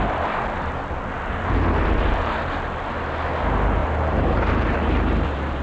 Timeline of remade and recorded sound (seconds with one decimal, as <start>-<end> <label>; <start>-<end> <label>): 0.0-3.8 recorded; 3.8-5.6 remade